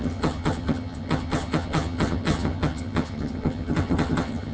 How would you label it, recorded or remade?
remade